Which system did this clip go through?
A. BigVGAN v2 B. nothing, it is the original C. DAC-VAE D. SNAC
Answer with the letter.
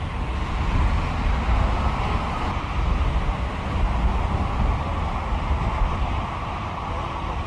B